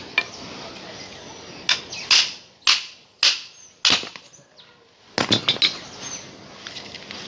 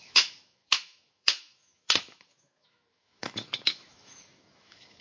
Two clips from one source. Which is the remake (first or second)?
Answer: second